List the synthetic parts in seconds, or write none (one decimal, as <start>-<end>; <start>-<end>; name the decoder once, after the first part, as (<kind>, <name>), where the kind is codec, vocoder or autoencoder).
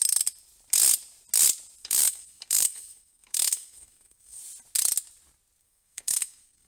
1.8-4.4 (codec, SNAC); 5.6-6.7